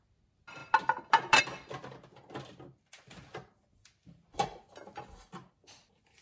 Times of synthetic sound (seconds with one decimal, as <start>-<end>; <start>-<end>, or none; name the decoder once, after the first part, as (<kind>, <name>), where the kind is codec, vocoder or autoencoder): none